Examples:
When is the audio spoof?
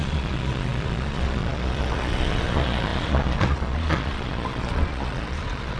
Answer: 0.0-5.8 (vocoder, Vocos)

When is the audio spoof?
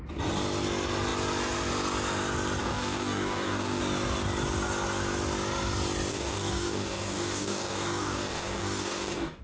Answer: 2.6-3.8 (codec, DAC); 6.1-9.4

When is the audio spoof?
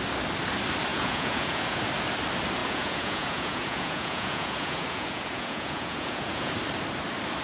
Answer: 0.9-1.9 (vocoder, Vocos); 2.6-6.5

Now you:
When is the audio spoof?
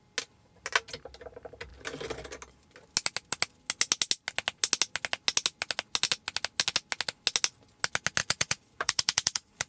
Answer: 8.2-9.7 (vocoder, Vocos)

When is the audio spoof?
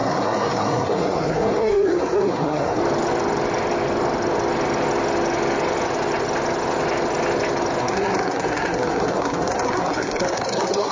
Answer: 0.0-2.8 (codec, SNAC); 7.8-10.9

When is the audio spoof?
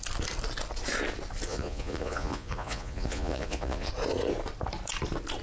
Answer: 1.5-3.9 (vocoder, Vocos)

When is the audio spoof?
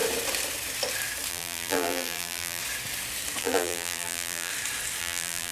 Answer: 1.3-2.6 (vocoder, BigVGAN v2); 3.4-4.5; 5.0-5.5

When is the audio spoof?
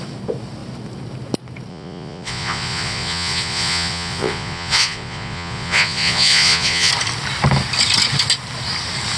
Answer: 1.7-6.9 (vocoder, Vocos)